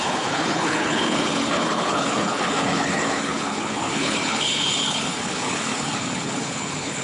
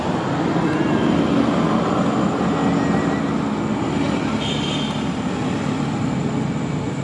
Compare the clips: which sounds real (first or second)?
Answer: second